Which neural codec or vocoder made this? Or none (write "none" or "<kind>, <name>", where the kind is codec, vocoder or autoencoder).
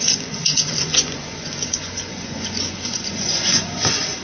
vocoder, Vocos